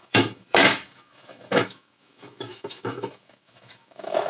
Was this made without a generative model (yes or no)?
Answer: no